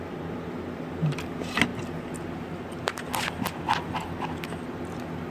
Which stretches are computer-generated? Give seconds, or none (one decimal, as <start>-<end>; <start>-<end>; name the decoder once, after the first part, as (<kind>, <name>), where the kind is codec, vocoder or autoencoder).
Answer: none